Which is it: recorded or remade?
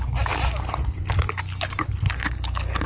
recorded